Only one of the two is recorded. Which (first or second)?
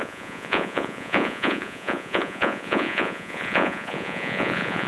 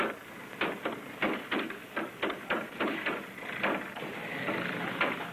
second